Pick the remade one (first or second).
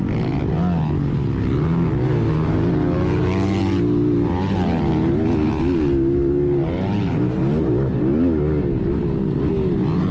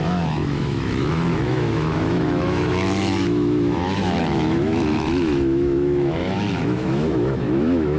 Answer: second